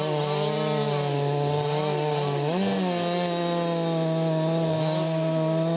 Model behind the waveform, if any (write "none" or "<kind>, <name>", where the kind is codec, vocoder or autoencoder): none